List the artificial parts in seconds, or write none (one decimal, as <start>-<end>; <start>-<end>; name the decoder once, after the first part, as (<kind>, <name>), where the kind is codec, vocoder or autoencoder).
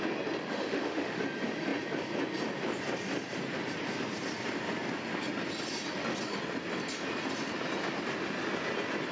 0.5-1.2 (autoencoder, DAC-VAE)